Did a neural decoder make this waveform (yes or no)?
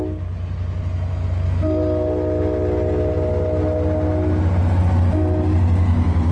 no